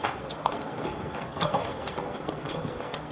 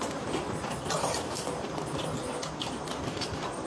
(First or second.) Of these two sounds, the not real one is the first